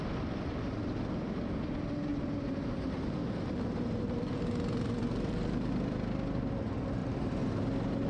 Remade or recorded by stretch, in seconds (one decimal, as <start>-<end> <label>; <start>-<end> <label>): 0.0-2.1 recorded; 2.1-5.7 remade; 5.7-8.1 recorded